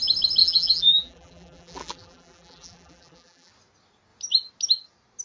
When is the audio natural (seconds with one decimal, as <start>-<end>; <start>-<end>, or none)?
0.0-0.4; 3.5-5.2